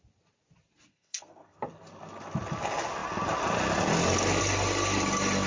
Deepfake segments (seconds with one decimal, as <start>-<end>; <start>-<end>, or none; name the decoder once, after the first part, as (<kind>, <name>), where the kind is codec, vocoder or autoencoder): 0.9-1.6 (codec, SNAC)